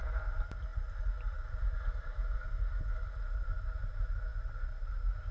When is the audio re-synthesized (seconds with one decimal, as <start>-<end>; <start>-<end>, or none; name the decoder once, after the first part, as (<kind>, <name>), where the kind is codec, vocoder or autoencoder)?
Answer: none